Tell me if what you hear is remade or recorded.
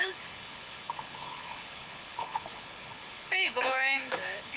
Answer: remade